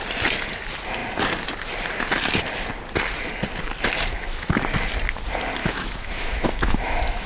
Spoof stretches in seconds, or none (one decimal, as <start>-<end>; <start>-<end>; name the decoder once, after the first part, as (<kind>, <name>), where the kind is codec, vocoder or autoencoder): 4.1-4.6 (autoencoder, DAC-VAE); 5.6-7.3